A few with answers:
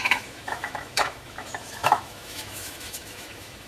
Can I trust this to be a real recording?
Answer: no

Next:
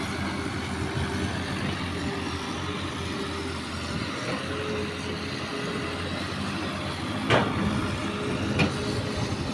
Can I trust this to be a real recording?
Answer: yes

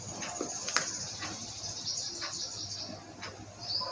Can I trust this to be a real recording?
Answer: yes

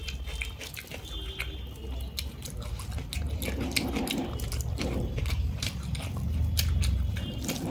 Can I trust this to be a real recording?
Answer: yes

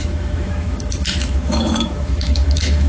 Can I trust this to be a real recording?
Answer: no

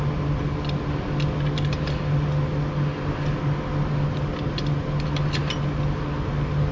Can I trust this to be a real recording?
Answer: yes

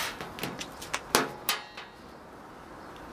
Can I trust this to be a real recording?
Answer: yes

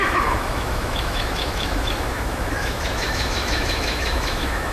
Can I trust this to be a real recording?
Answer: no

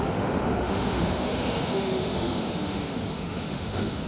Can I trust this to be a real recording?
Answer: no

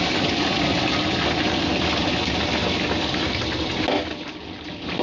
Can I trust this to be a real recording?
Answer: yes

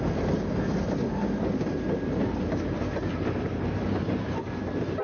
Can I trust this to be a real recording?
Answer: yes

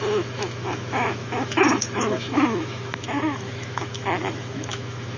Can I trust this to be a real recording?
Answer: no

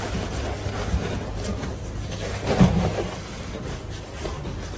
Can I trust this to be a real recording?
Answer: yes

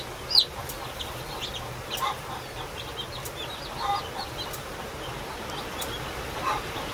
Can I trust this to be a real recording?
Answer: yes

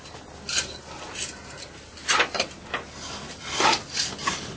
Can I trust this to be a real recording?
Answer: yes